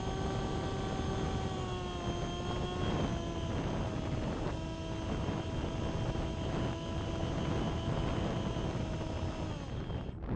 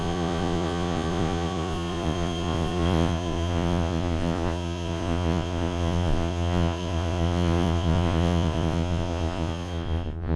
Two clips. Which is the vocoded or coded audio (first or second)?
second